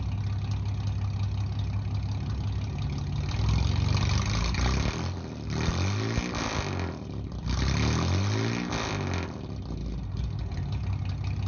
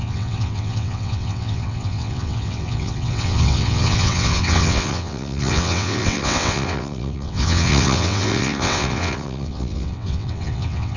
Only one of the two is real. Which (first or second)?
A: first